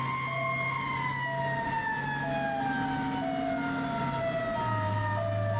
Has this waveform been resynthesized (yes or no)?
no